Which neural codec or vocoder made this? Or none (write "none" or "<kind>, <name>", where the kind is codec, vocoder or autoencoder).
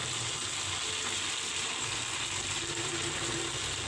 none